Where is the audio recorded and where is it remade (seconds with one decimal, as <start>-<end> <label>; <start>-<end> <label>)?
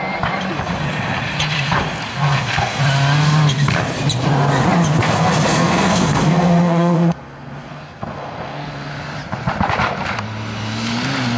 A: 0.0-2.1 recorded; 2.1-2.8 remade; 2.8-5.0 recorded; 5.0-8.9 remade; 8.9-11.4 recorded